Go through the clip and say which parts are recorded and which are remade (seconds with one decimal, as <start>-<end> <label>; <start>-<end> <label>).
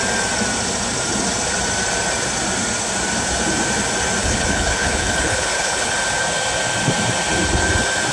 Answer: 0.0-4.2 recorded; 4.2-5.9 remade; 5.9-8.1 recorded